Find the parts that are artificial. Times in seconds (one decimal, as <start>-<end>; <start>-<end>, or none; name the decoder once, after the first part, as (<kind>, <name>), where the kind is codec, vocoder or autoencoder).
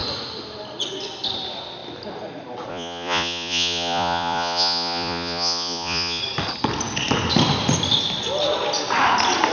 2.7-6.2 (vocoder, Vocos)